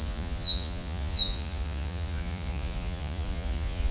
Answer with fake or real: fake